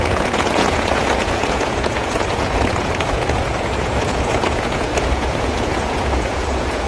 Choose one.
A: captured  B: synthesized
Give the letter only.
B